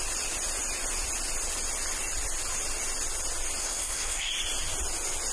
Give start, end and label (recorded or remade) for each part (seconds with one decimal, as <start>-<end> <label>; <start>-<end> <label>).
0.0-3.6 recorded; 3.6-4.3 remade; 4.3-5.3 recorded